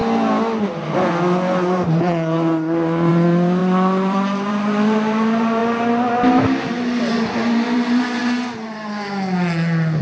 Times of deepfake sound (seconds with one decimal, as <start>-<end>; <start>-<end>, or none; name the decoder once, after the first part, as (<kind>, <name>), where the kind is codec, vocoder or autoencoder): 3.1-5.6 (vocoder, BigVGAN v2); 7.0-8.2